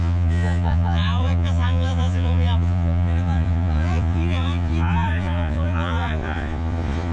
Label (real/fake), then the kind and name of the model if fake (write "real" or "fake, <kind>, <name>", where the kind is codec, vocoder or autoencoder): fake, vocoder, Vocos